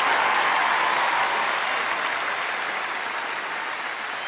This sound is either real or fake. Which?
real